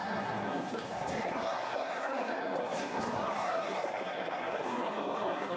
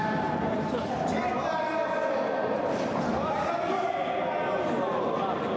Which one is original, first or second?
second